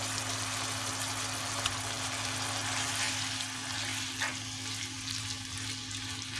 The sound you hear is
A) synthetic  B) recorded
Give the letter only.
B